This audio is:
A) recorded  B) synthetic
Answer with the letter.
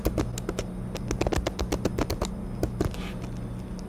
A